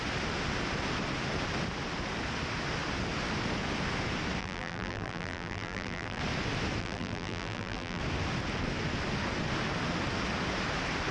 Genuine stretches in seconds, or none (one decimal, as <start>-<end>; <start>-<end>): 0.0-4.4; 6.2-6.8; 8.0-11.1